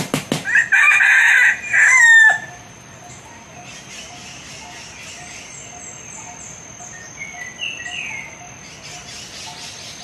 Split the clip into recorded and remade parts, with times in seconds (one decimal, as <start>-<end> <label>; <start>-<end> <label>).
0.0-10.0 recorded